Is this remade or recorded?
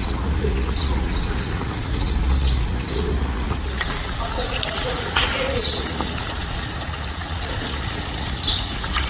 remade